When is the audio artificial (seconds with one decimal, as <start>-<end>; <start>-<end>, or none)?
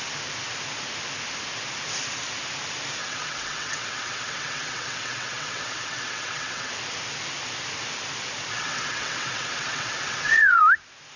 3.0-6.7; 8.5-10.6